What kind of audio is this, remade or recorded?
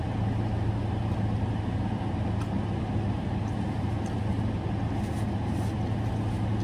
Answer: recorded